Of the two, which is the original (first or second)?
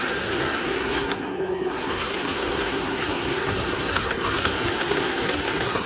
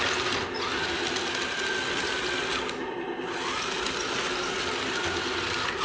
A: second